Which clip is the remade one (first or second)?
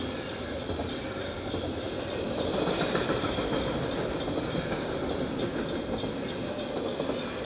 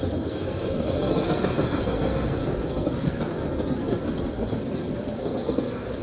second